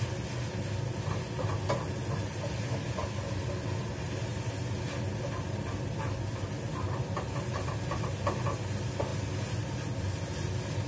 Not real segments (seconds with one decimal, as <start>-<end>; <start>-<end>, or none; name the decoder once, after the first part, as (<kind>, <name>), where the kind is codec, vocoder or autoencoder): none